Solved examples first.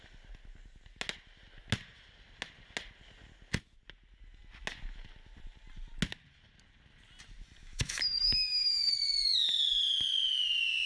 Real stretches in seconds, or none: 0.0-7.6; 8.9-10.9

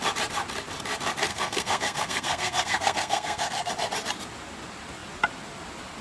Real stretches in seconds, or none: 0.0-1.3; 3.7-6.0